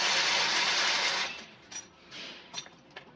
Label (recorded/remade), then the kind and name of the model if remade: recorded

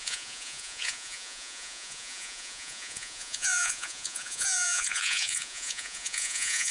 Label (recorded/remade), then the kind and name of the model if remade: remade, vocoder, Vocos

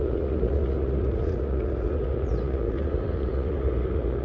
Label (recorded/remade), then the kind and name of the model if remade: remade, vocoder, Vocos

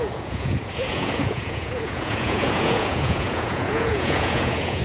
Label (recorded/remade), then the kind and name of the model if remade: remade, vocoder, Vocos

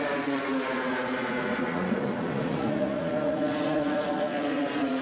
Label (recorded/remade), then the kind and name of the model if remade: remade, vocoder, Vocos